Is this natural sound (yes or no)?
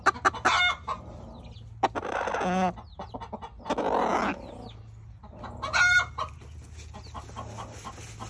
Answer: yes